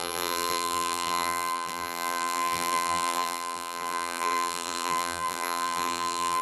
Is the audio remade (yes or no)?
yes